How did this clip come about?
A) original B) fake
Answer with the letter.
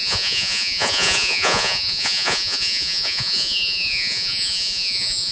B